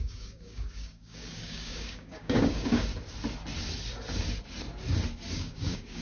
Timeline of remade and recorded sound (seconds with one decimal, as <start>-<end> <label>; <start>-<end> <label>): 0.0-2.9 remade; 2.9-5.3 recorded; 5.3-6.0 remade